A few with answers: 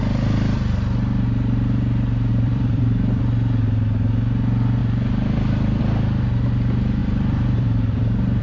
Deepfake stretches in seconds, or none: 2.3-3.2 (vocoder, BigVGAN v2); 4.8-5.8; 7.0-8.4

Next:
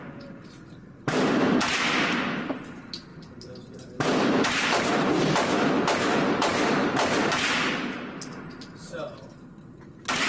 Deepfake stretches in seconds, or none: 3.1-4.9 (vocoder, BigVGAN v2)

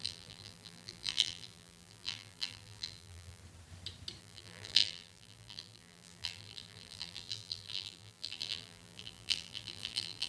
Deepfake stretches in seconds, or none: 0.0-3.4 (vocoder, BigVGAN v2); 4.2-10.3